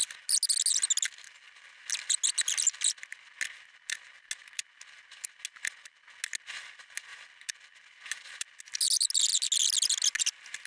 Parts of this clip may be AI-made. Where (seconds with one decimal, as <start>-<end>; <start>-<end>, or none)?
none